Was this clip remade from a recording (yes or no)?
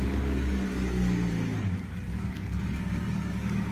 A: yes